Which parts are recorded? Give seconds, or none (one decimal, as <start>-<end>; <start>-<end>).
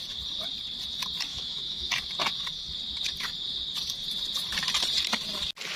0.0-1.3; 1.9-5.8